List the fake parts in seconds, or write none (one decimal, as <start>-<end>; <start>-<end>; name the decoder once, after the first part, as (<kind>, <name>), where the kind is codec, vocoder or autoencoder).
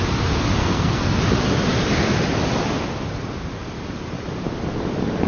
0.6-1.2 (codec, SNAC)